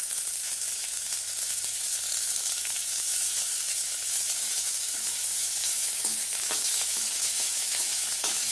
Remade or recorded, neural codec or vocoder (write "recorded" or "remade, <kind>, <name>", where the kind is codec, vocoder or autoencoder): remade, autoencoder, DAC-VAE